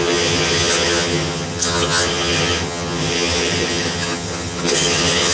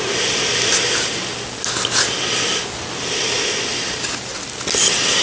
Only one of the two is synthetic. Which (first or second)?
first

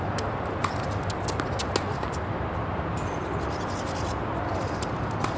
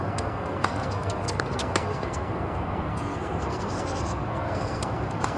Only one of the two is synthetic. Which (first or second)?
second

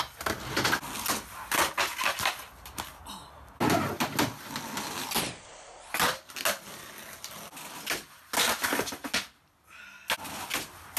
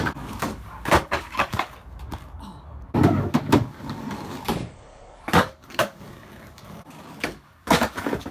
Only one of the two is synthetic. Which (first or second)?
second